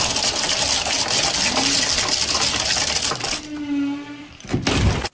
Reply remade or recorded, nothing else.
recorded